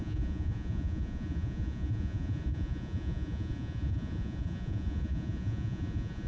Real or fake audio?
fake